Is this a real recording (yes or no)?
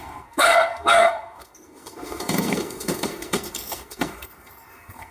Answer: no